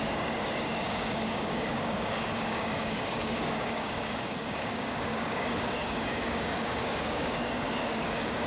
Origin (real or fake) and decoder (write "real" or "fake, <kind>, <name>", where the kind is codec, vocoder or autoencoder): fake, codec, DAC